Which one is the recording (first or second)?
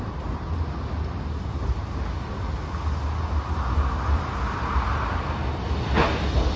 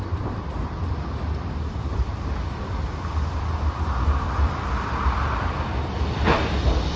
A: first